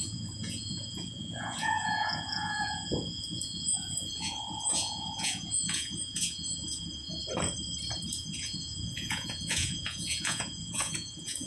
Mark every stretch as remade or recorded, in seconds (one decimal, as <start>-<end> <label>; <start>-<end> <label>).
0.0-7.2 remade; 7.2-8.1 recorded; 8.1-11.5 remade